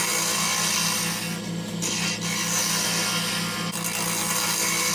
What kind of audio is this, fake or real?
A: real